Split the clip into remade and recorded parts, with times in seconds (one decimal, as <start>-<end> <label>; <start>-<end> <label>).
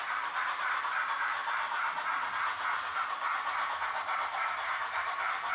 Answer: 0.0-5.5 recorded